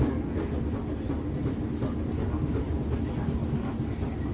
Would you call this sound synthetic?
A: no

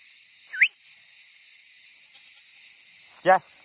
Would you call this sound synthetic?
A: no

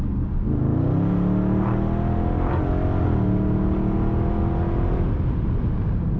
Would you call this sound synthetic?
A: no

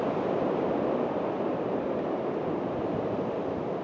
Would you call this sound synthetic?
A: no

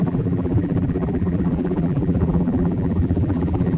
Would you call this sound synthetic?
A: yes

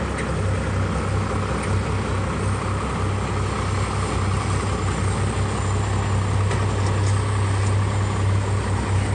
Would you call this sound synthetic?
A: no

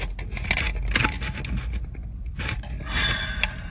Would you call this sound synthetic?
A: no